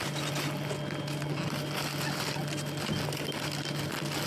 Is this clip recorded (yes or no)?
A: yes